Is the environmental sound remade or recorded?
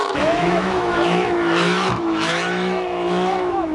remade